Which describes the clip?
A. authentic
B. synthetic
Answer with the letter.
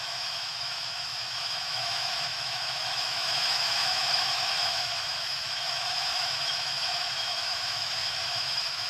B